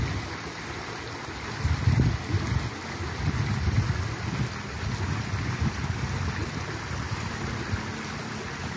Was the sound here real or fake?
real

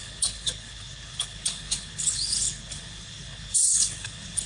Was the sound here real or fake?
fake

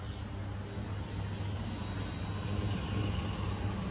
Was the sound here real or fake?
real